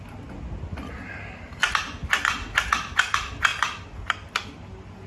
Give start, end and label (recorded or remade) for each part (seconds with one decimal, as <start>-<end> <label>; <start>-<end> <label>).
0.0-5.1 recorded